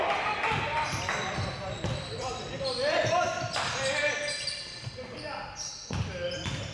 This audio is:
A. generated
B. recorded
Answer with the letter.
B